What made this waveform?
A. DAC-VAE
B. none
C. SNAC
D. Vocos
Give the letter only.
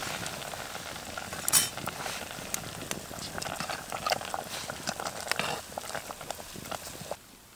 B